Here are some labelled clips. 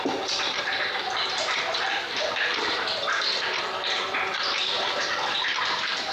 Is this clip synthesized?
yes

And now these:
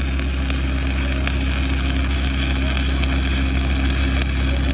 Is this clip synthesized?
no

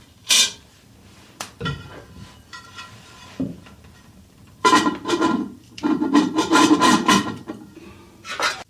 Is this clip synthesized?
yes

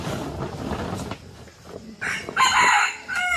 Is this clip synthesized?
no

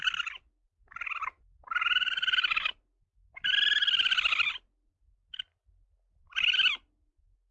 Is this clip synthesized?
no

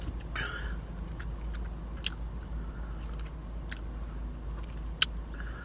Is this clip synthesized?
no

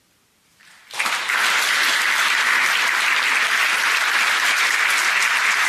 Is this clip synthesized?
no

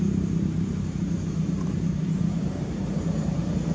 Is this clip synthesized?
yes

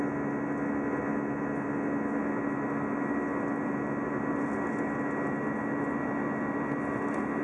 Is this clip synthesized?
no